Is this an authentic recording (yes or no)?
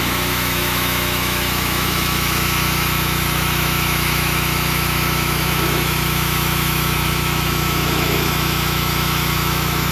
no